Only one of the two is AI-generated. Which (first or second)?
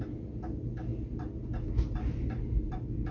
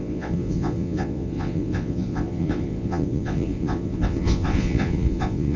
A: second